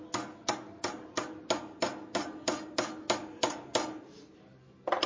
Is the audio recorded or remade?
recorded